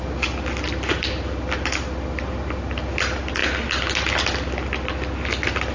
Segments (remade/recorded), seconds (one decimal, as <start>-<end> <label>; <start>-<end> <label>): 0.0-5.7 recorded